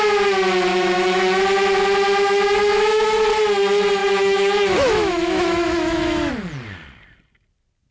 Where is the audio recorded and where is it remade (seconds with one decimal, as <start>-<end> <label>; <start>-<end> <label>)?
0.0-0.7 recorded; 0.7-1.4 remade; 1.4-2.7 recorded; 2.7-3.2 remade; 3.2-4.0 recorded; 4.0-6.3 remade; 6.3-7.9 recorded